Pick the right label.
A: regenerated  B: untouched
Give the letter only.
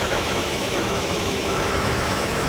A